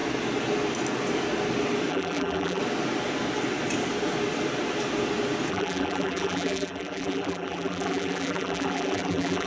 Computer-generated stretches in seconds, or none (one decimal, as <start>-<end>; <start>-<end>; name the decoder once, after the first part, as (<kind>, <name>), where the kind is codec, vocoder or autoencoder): 1.9-2.6 (vocoder, BigVGAN v2); 5.5-9.5

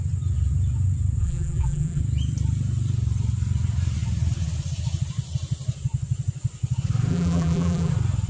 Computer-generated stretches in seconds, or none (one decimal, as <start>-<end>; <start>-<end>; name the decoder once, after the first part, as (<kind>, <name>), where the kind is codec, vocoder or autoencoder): 1.2-2.0 (vocoder, BigVGAN v2); 7.1-7.9

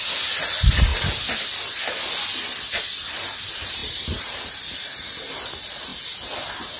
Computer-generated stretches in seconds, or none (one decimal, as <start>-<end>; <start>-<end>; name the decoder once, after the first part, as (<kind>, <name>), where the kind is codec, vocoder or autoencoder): 3.8-4.6 (vocoder, BigVGAN v2)

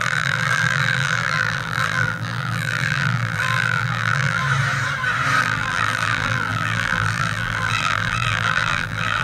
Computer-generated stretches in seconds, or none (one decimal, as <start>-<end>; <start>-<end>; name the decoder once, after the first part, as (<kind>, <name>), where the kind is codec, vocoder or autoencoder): 0.0-4.4 (vocoder, BigVGAN v2); 5.4-9.2

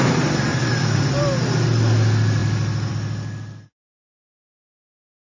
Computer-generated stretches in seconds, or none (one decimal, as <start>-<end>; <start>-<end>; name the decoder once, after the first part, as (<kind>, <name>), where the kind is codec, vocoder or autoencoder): 0.5-1.2 (vocoder, BigVGAN v2)

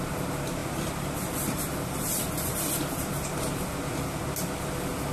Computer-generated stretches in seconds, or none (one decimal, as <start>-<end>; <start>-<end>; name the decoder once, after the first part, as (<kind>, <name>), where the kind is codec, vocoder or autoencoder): 0.6-3.7 (vocoder, BigVGAN v2)